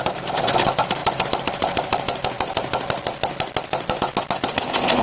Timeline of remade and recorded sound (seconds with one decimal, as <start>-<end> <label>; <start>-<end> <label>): 0.0-5.0 recorded